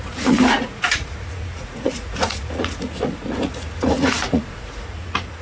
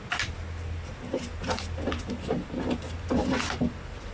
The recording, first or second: second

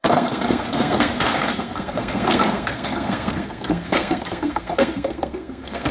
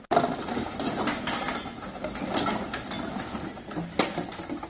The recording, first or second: second